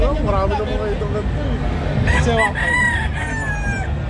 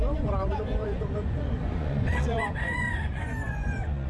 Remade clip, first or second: second